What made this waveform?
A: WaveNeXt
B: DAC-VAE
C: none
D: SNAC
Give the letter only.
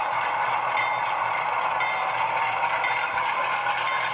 C